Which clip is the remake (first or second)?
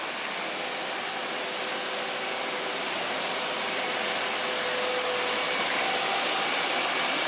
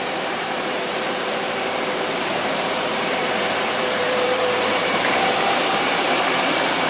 second